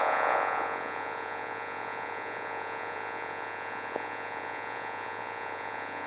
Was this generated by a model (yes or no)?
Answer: yes